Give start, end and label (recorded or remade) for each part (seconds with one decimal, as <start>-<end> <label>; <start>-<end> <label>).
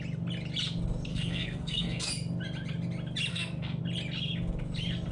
0.0-1.1 recorded; 1.1-2.1 remade; 2.1-3.3 recorded; 3.3-3.8 remade; 3.8-5.1 recorded